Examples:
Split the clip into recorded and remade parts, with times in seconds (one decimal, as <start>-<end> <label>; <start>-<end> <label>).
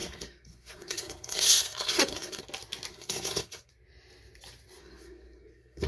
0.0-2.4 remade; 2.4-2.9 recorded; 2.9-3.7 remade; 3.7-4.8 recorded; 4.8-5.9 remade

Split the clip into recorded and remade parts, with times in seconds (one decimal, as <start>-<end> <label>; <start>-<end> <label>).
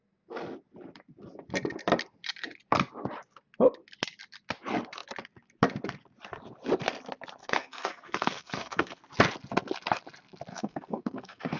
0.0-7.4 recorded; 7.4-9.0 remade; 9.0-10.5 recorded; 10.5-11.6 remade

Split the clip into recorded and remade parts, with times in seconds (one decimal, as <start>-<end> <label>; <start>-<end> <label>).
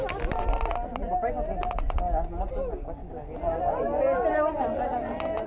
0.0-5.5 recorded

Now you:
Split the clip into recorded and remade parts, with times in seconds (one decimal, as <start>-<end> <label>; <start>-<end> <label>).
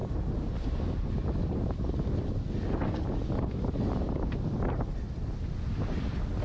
0.0-1.8 remade; 1.8-6.4 recorded